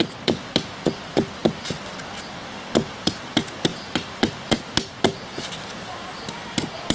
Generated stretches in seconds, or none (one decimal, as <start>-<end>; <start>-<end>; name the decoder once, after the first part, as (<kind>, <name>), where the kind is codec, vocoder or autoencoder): 3.7-4.6 (vocoder, BigVGAN v2)